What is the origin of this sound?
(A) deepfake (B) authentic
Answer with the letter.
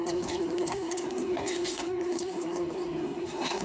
A